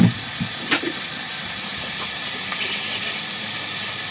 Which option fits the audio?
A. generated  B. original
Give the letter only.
B